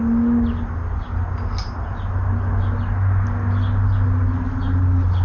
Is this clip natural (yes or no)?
yes